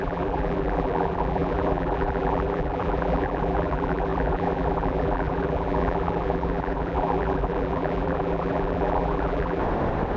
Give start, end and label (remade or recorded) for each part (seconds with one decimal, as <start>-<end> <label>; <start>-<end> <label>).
0.0-9.6 remade; 9.6-10.2 recorded